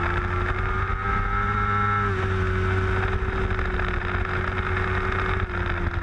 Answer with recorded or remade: recorded